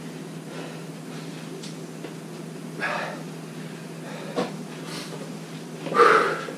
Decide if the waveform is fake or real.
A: real